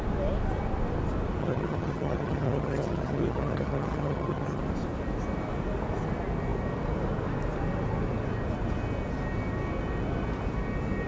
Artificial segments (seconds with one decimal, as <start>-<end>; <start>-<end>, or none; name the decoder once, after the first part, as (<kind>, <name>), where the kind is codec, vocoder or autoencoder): 1.4-4.6 (vocoder, HiFi-GAN)